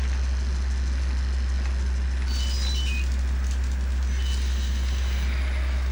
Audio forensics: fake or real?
real